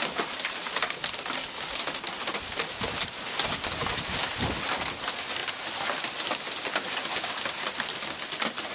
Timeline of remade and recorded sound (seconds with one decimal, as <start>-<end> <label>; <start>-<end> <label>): 0.0-8.7 recorded